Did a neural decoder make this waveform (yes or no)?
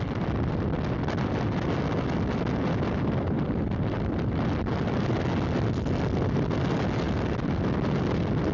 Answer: no